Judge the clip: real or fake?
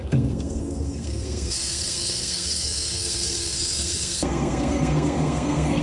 fake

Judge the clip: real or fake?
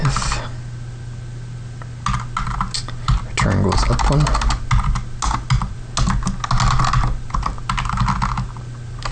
real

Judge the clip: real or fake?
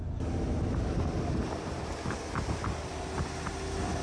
real